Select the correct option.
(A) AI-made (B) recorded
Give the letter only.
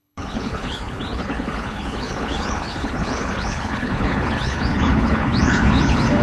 A